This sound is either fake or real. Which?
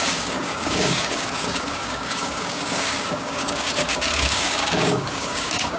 fake